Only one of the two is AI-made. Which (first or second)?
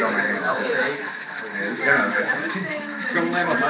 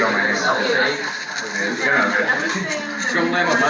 first